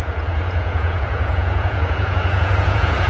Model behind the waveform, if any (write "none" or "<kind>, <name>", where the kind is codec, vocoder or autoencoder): vocoder, Vocos